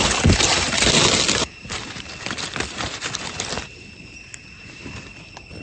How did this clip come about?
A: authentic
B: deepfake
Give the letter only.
A